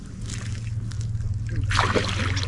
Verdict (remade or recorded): recorded